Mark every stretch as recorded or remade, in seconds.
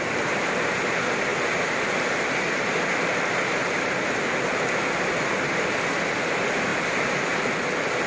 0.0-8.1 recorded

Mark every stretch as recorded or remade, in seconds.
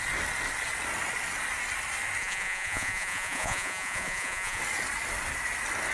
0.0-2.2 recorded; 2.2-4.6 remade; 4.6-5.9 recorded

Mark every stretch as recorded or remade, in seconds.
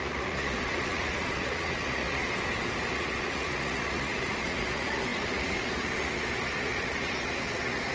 0.0-2.2 remade; 2.2-2.9 recorded; 2.9-7.9 remade